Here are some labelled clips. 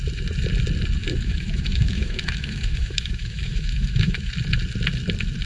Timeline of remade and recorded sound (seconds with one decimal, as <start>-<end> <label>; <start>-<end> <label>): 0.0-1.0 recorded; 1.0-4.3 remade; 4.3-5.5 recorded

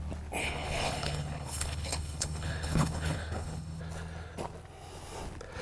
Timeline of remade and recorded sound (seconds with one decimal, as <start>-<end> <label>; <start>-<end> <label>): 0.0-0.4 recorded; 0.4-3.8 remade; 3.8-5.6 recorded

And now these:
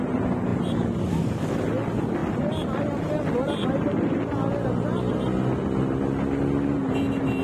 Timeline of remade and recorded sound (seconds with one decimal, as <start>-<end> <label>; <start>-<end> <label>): 0.0-7.4 recorded

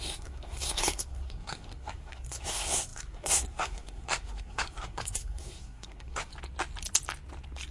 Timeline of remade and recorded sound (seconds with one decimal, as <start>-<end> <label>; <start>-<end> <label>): 0.0-6.3 remade; 6.3-7.7 recorded